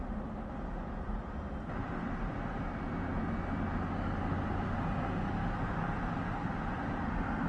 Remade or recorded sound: recorded